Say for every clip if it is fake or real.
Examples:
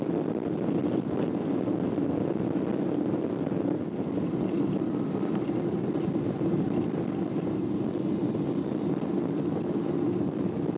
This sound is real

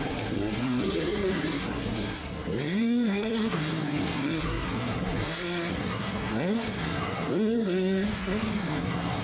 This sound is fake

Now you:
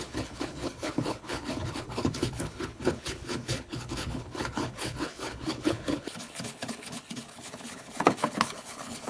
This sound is fake